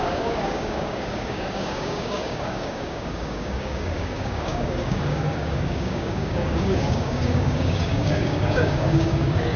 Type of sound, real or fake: fake